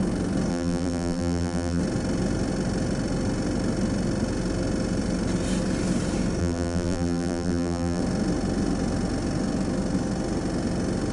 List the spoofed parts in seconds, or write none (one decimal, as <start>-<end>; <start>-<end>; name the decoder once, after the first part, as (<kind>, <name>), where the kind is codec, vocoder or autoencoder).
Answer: 0.5-1.8 (vocoder, BigVGAN v2); 6.4-8.0